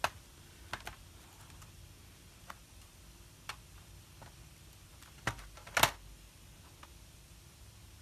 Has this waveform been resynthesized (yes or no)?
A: no